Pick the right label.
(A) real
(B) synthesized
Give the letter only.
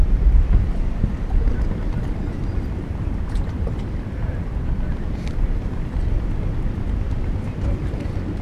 B